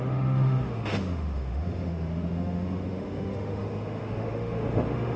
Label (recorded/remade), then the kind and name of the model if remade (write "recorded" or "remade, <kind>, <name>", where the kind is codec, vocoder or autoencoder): remade, autoencoder, DAC-VAE